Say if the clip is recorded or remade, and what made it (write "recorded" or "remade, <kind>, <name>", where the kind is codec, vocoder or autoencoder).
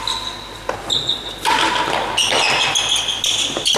recorded